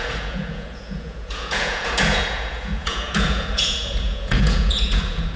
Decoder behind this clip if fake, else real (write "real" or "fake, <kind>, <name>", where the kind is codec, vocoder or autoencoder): fake, vocoder, Vocos